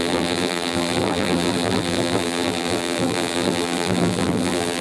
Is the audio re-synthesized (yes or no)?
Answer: yes